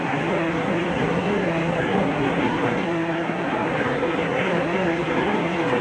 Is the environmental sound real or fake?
fake